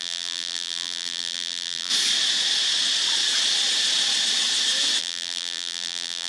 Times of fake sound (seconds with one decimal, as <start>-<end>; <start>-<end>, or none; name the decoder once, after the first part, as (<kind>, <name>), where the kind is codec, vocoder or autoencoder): 0.0-1.9 (vocoder, BigVGAN v2); 5.0-6.3